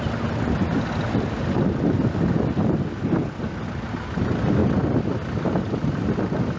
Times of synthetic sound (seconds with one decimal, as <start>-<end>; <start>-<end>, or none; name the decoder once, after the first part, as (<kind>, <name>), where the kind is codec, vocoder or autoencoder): none